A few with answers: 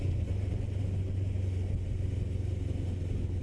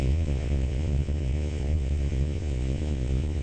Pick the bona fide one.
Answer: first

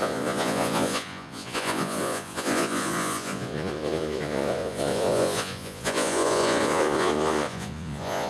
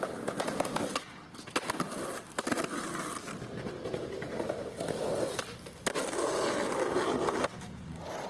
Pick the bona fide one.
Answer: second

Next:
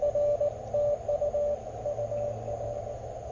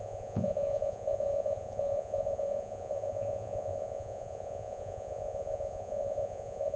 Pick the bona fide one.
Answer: first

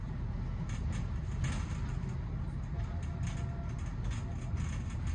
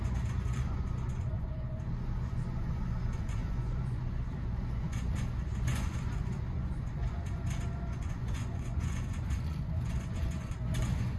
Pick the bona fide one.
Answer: first